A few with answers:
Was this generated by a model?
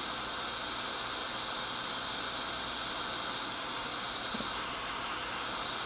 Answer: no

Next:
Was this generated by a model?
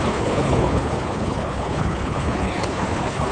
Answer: yes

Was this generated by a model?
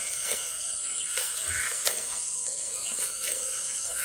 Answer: yes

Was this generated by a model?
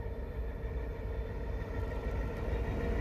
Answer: no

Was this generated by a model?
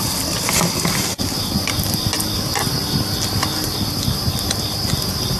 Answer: no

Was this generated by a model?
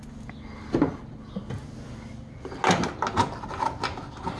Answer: no